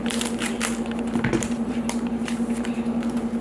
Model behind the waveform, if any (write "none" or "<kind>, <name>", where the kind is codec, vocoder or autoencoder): vocoder, BigVGAN v2